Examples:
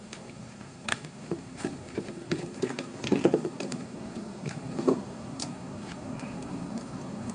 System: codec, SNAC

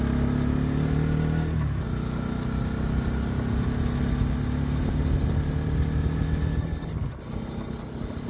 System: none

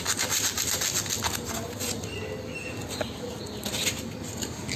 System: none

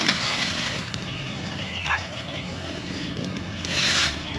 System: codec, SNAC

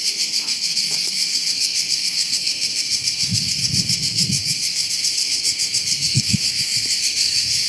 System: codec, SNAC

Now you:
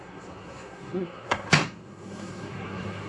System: codec, SNAC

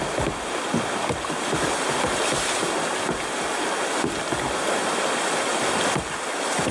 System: none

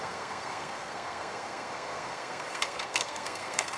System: codec, SNAC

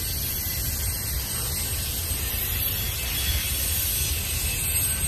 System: none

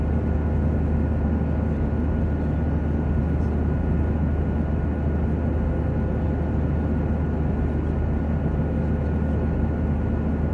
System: none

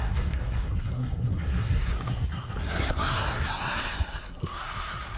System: codec, SNAC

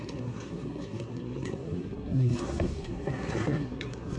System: codec, SNAC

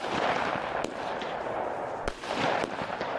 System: none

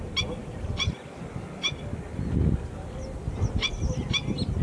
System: none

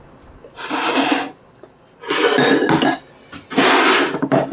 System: none